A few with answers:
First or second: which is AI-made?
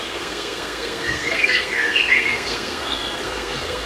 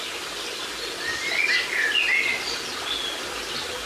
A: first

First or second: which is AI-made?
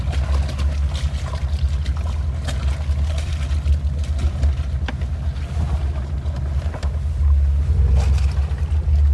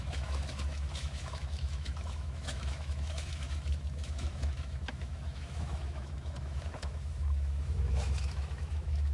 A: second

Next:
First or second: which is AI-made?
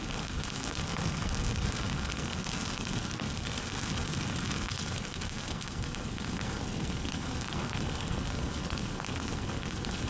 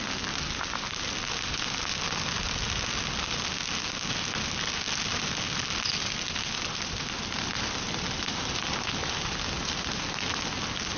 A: first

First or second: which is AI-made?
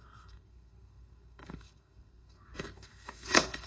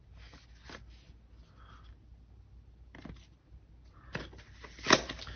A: first